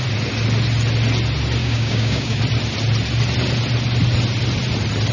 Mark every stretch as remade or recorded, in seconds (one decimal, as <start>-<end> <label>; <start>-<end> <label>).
0.0-1.6 recorded; 1.6-2.4 remade; 2.4-5.1 recorded